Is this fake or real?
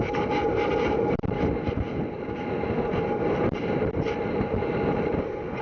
real